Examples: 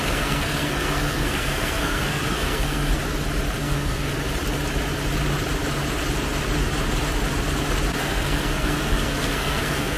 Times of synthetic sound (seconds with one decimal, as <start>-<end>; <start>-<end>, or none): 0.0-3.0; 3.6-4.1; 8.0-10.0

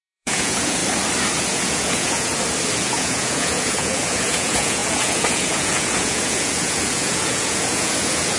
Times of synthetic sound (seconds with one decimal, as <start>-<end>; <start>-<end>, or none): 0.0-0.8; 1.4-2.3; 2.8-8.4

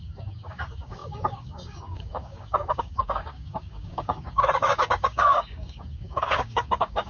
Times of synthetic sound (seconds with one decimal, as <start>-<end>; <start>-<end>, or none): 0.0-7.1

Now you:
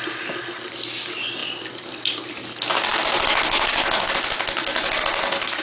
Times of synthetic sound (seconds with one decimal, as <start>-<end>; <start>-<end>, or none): none

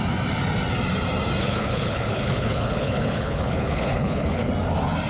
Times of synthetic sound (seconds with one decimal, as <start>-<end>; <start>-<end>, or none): 1.4-4.5